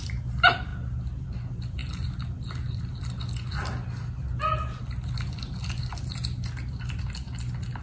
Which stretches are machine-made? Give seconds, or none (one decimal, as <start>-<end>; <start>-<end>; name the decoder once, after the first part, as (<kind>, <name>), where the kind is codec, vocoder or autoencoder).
none